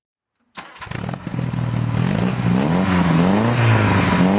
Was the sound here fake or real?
real